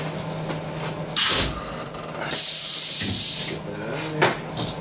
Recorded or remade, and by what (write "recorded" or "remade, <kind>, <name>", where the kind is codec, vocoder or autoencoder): recorded